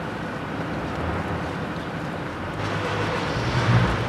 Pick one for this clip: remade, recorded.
recorded